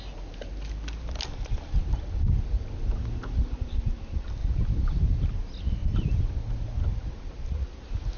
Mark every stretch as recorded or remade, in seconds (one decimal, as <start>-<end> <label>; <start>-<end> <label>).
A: 0.0-8.2 recorded